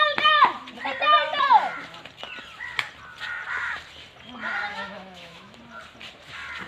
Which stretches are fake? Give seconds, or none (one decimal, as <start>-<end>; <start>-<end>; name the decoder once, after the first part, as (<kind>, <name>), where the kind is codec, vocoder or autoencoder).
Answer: 4.7-5.6 (autoencoder, DAC-VAE)